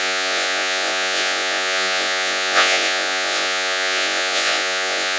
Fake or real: fake